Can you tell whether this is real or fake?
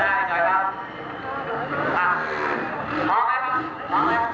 real